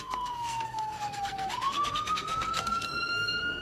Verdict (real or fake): fake